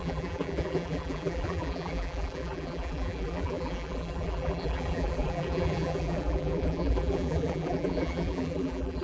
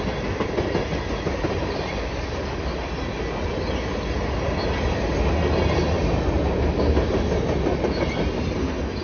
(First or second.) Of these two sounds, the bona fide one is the second